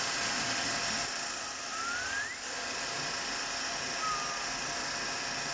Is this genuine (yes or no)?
yes